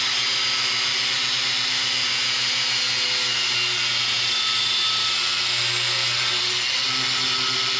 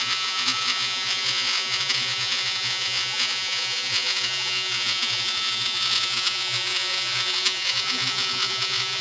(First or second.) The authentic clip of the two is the first